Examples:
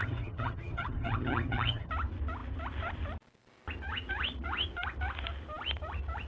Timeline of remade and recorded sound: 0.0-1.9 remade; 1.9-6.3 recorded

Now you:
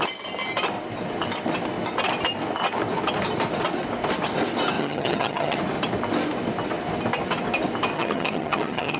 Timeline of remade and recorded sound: 0.0-4.8 recorded; 4.8-5.6 remade; 5.6-7.9 recorded; 7.9-9.0 remade